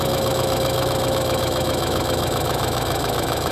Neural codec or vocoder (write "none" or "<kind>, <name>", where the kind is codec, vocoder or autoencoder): autoencoder, DAC-VAE